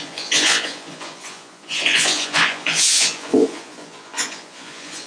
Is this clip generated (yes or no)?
yes